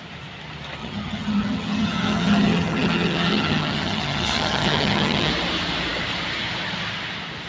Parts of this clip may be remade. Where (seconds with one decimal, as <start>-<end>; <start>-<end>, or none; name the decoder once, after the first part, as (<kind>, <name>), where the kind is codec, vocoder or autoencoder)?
0.8-5.3 (vocoder, HiFi-GAN)